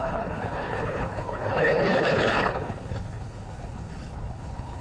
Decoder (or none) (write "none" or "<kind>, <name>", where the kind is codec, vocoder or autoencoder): codec, HILCodec